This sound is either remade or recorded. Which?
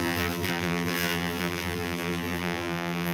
remade